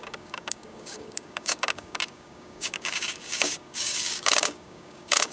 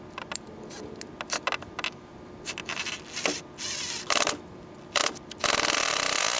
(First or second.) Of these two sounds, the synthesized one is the first